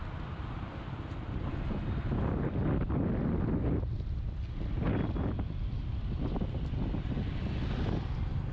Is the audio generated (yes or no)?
no